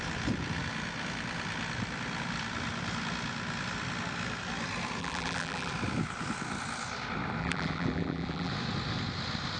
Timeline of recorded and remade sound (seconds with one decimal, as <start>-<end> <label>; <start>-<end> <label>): 0.0-5.0 recorded; 5.0-5.7 remade; 5.7-7.4 recorded; 7.4-8.5 remade; 8.5-9.6 recorded